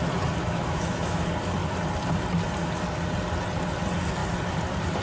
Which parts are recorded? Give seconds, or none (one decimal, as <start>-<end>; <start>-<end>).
0.0-0.4; 1.2-5.0